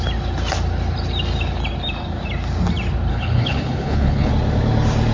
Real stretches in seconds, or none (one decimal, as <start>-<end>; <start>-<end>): 0.0-3.1; 4.3-5.1

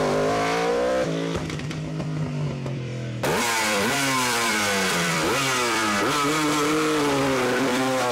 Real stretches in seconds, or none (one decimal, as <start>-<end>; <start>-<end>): 5.8-6.7

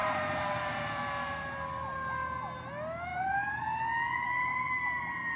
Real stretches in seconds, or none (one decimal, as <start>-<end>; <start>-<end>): 0.9-3.1; 3.6-4.5; 5.0-5.4

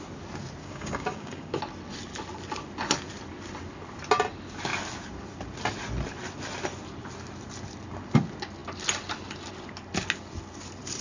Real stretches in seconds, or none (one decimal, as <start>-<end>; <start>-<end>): 0.0-0.6; 1.6-11.0

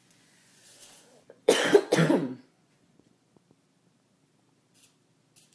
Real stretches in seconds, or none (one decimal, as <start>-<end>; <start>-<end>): 3.3-5.5

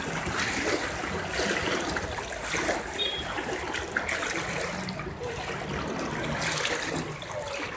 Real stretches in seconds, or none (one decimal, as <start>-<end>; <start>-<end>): 0.0-7.8

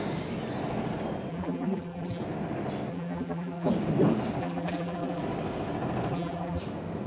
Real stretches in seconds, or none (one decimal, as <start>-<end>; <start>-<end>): 0.0-1.3; 2.2-2.9; 3.7-4.4; 5.2-6.1; 6.6-7.1

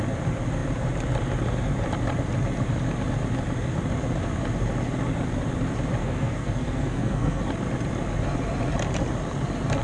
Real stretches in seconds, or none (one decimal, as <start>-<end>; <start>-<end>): 0.0-6.0; 7.4-9.8